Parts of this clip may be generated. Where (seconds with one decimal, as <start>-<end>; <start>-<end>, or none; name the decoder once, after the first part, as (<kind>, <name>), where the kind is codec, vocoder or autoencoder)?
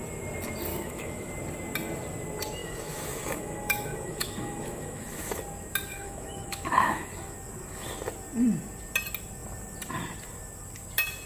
0.7-1.3 (autoencoder, DAC-VAE); 2.6-5.4; 5.9-7.1